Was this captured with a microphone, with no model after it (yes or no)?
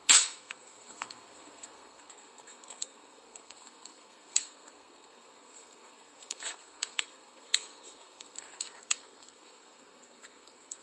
no